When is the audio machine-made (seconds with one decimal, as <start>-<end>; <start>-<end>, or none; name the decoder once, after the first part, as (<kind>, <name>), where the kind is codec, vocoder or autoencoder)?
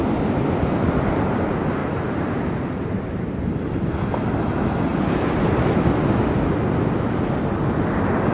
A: 1.8-3.7 (vocoder, BigVGAN v2); 4.9-5.6